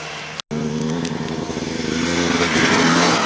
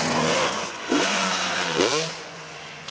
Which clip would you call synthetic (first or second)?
second